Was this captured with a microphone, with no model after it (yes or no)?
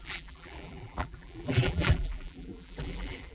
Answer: no